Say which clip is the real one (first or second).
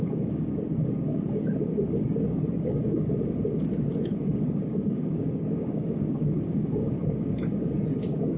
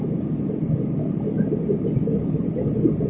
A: second